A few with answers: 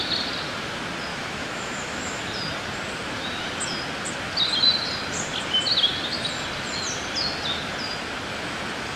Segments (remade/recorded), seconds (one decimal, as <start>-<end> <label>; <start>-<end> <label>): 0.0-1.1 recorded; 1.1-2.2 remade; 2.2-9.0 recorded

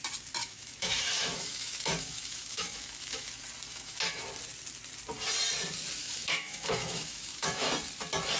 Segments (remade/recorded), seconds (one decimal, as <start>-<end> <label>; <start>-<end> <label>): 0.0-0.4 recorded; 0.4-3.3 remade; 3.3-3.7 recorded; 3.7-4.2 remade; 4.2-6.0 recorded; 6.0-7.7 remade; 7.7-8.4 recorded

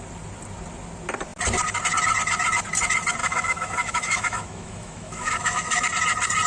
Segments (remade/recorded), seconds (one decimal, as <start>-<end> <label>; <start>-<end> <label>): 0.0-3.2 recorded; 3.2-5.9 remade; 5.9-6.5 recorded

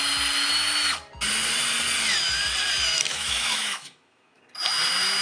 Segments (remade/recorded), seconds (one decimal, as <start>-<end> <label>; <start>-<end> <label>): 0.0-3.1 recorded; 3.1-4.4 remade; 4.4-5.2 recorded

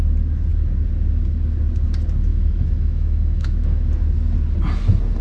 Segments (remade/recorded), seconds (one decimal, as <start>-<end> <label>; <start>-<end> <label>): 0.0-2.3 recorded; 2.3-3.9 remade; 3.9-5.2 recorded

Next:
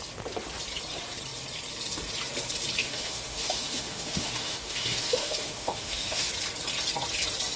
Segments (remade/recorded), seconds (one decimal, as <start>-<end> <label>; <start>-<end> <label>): 0.0-2.8 recorded; 2.8-6.3 remade; 6.3-7.6 recorded